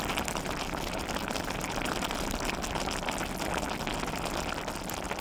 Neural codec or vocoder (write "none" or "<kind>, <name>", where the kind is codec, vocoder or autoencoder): none